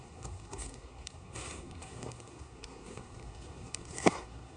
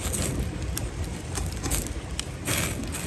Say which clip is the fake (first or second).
first